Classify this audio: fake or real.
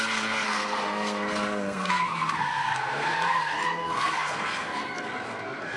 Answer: fake